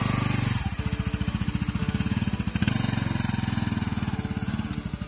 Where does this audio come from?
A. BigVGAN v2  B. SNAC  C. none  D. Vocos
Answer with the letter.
C